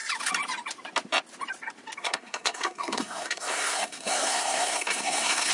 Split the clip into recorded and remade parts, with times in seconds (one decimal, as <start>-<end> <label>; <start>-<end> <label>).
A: 0.0-2.0 recorded; 2.0-5.5 remade